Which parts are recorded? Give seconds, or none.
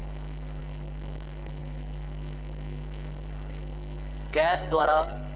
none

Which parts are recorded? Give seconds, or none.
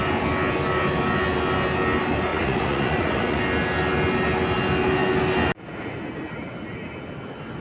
0.0-2.3; 3.4-7.6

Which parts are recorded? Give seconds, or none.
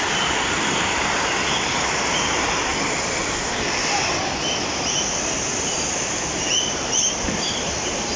2.7-3.2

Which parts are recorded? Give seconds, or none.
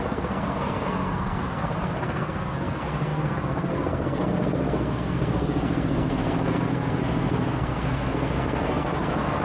none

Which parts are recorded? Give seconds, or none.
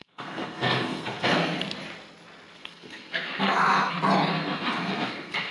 1.6-2.6; 3.9-4.3